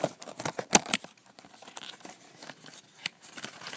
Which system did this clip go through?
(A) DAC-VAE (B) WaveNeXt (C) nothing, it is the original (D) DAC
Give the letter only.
C